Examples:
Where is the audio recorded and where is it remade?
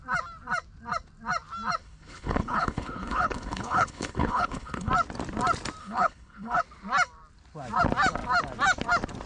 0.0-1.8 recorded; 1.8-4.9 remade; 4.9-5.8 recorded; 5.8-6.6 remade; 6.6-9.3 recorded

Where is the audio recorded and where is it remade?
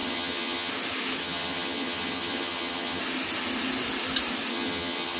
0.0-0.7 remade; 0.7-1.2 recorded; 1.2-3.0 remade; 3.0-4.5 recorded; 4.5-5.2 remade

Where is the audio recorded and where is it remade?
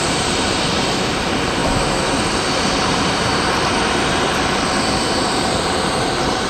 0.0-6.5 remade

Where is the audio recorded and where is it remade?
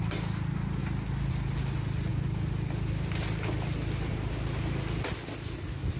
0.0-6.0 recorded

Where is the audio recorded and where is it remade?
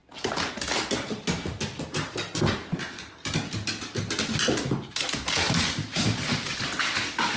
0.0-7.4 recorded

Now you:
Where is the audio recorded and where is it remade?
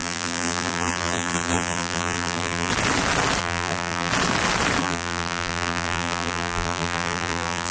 0.0-2.7 remade; 2.7-3.4 recorded; 3.4-4.1 remade; 4.1-4.8 recorded; 4.8-7.7 remade